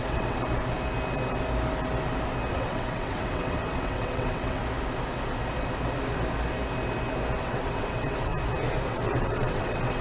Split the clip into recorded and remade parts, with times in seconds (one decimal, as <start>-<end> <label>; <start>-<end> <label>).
0.0-0.4 remade; 0.4-2.5 recorded; 2.5-4.6 remade; 4.6-7.4 recorded; 7.4-8.3 remade; 8.3-8.9 recorded; 8.9-10.0 remade